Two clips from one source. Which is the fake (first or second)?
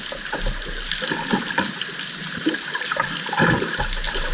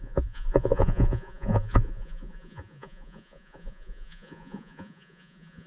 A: second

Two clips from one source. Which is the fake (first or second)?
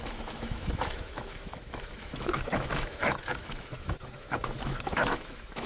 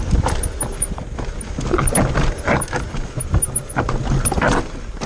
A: first